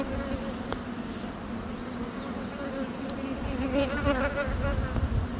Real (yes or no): yes